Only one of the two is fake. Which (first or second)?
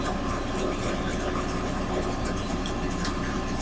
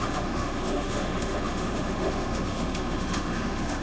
second